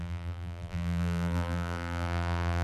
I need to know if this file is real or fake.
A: fake